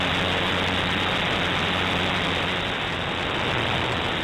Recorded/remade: recorded